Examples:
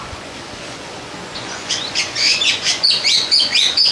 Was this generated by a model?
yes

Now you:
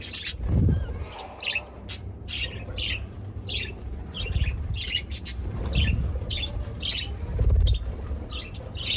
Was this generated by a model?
no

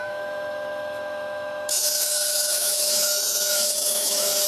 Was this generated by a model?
yes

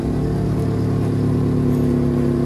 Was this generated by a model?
no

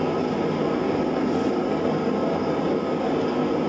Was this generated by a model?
no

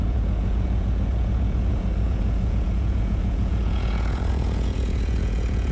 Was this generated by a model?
yes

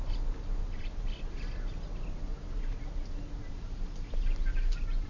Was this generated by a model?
no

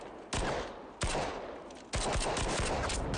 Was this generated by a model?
no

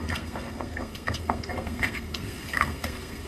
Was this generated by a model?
yes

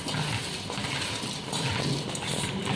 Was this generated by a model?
no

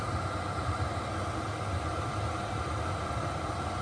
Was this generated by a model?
yes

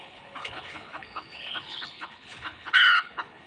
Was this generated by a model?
yes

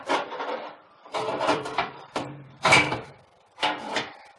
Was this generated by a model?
yes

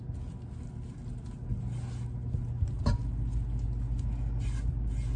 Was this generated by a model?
no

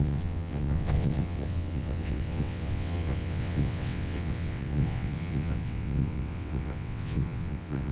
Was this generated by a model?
yes